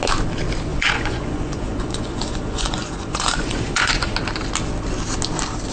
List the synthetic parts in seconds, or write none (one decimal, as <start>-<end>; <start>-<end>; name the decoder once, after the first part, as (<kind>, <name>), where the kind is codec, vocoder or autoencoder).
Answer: 0.7-4.1 (vocoder, Vocos)